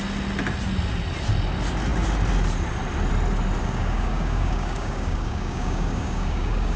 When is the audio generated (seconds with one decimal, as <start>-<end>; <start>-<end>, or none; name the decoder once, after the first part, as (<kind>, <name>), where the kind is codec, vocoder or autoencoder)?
3.6-6.8 (codec, DAC)